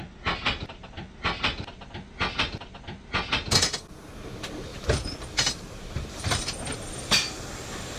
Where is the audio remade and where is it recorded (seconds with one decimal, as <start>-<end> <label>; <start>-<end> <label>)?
0.0-4.7 recorded; 4.7-6.4 remade; 6.4-8.0 recorded